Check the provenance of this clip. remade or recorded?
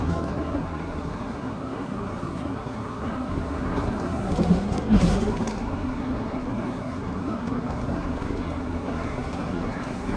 remade